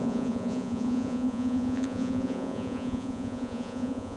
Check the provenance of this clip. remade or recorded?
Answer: remade